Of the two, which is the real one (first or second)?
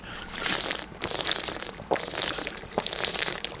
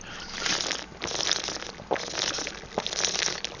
second